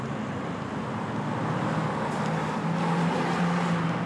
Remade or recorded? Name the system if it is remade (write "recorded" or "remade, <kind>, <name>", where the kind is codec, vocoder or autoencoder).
recorded